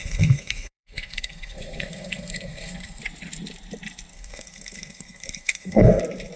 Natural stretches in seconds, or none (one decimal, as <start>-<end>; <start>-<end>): 3.0-4.1; 6.0-6.4